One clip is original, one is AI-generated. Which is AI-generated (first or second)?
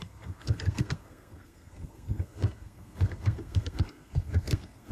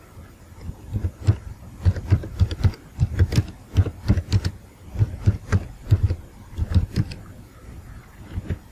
first